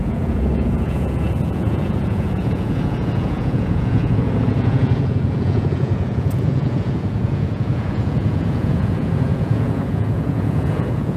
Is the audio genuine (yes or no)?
no